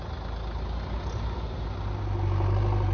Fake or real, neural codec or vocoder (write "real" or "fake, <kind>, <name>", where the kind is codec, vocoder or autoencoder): real